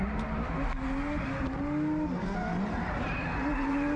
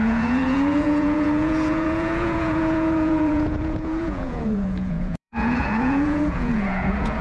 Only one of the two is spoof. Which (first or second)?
second